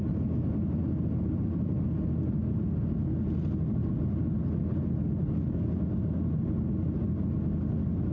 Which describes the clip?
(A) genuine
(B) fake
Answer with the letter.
A